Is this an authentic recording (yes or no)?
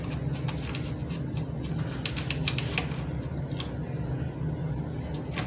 yes